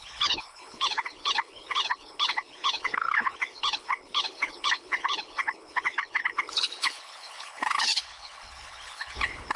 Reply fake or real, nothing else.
fake